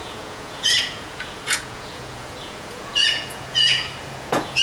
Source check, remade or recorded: remade